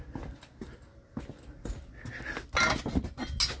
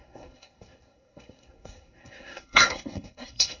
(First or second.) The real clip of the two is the first